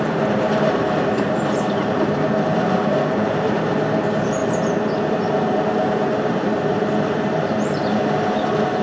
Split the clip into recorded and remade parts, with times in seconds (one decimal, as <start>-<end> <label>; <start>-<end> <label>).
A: 0.0-4.4 remade; 4.4-5.1 recorded; 5.1-8.8 remade